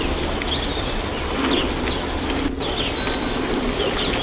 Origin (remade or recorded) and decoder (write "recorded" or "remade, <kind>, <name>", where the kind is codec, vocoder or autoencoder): recorded